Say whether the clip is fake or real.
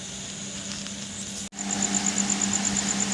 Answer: real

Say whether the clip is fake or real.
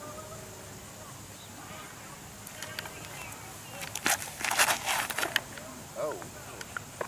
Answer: real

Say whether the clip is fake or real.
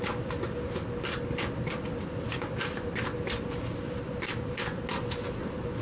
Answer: real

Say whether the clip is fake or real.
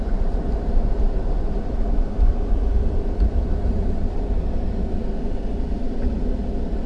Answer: real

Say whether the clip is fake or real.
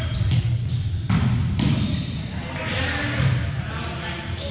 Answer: real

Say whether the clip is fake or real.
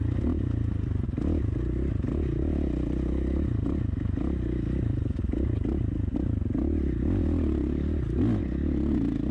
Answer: real